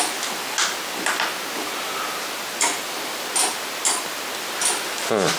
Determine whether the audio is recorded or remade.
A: recorded